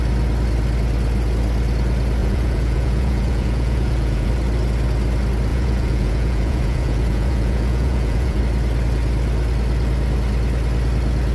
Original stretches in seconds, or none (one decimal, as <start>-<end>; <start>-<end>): 0.0-2.2; 4.3-5.5; 8.4-11.3